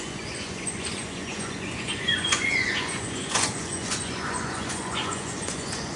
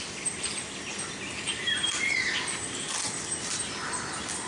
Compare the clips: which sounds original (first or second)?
second